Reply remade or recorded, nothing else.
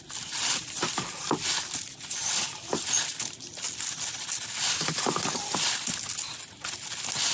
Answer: recorded